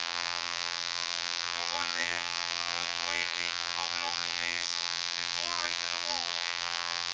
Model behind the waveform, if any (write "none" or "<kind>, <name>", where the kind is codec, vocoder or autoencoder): vocoder, BigVGAN v2